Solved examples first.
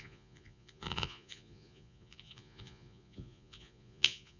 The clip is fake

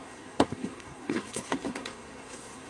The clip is fake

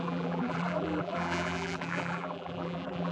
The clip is fake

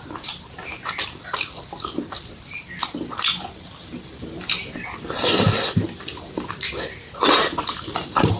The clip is fake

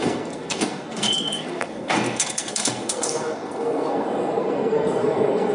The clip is fake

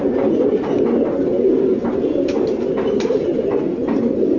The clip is real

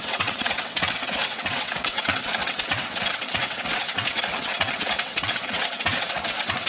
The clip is fake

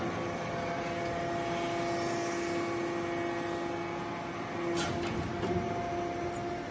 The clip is real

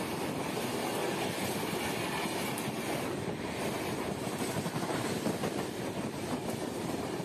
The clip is real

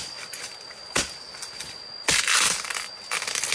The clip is real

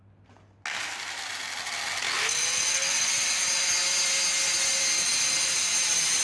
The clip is real